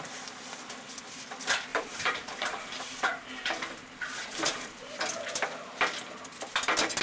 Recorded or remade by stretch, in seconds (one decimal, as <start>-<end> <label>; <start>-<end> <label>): 0.0-1.7 recorded; 1.7-4.9 remade; 4.9-7.0 recorded